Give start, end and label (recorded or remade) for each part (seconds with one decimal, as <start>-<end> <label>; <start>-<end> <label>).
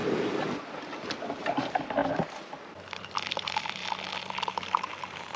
0.0-1.4 recorded; 1.4-2.0 remade; 2.0-3.0 recorded; 3.0-3.8 remade; 3.8-4.5 recorded; 4.5-5.4 remade